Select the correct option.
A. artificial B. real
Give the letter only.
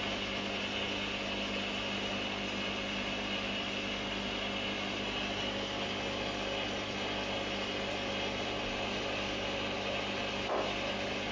B